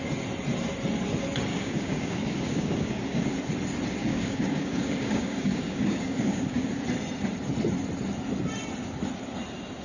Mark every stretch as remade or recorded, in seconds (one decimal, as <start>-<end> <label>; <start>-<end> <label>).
0.0-1.5 recorded; 1.5-3.3 remade; 3.3-4.0 recorded; 4.0-6.7 remade; 6.7-9.8 recorded